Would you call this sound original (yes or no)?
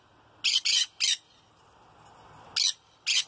yes